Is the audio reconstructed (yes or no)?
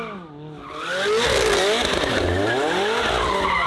no